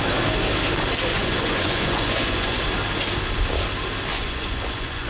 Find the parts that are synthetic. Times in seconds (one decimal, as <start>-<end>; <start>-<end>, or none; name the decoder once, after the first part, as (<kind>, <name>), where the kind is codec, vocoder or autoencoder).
1.1-2.6 (vocoder, Vocos); 4.1-5.1